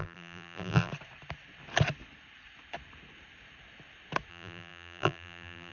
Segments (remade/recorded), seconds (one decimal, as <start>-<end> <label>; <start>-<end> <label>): 0.0-0.9 remade; 0.9-4.3 recorded; 4.3-5.7 remade